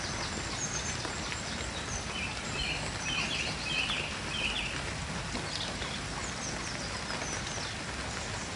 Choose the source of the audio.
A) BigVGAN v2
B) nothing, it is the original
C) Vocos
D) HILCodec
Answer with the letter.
B